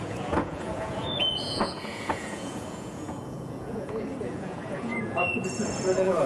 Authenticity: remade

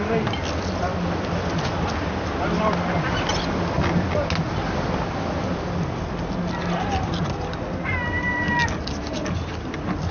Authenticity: recorded